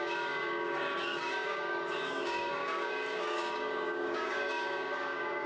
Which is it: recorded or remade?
remade